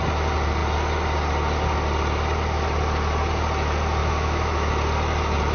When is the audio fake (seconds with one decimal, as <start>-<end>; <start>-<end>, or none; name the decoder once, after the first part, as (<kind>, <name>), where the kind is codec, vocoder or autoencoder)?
4.0-4.7 (autoencoder, DAC-VAE)